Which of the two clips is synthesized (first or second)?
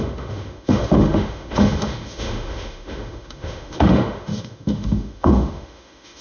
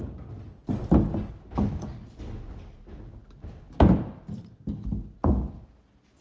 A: first